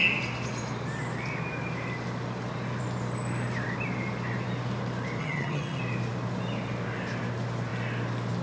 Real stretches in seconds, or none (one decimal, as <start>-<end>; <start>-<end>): 0.0-5.2; 5.8-8.4